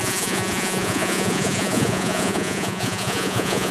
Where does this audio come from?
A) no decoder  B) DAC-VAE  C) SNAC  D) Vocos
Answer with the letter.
D